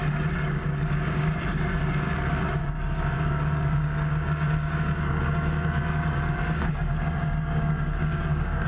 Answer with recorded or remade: remade